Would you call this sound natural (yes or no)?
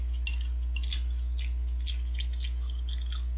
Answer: yes